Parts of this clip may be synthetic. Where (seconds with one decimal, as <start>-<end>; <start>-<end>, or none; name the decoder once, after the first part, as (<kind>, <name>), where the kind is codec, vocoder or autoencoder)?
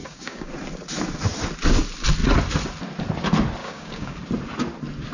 0.0-0.5 (codec, DAC); 3.6-4.2